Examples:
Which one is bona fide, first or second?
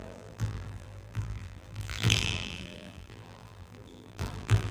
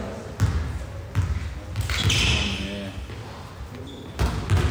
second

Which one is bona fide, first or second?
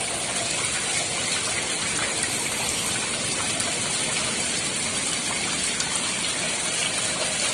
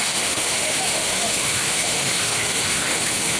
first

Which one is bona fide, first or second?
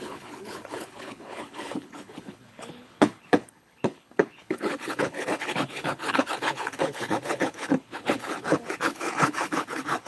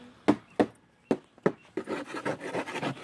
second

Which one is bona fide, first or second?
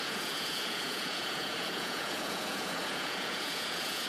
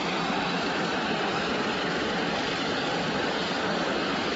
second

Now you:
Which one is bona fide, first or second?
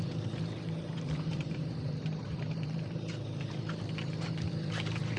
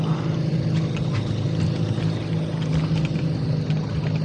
second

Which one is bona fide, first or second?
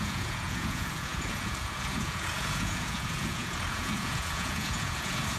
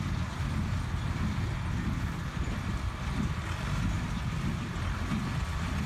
second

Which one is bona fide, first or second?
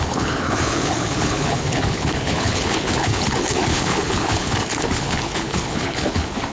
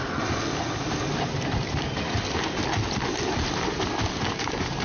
second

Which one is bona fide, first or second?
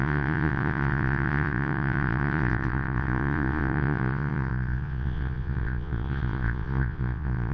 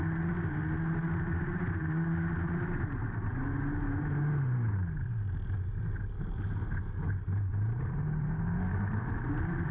second